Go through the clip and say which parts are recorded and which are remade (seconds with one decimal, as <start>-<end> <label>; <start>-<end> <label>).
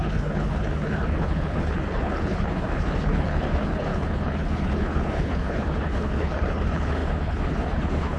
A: 0.0-8.2 remade